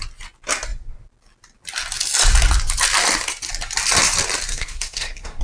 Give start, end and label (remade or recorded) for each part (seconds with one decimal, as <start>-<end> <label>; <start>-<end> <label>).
0.0-4.5 recorded; 4.5-5.4 remade